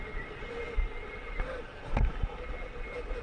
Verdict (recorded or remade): recorded